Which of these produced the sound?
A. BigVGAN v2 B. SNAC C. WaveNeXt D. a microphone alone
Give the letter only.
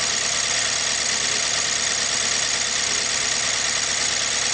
D